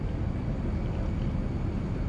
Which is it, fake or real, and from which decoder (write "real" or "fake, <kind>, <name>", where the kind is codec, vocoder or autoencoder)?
real